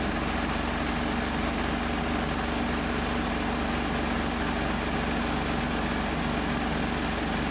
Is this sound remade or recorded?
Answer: recorded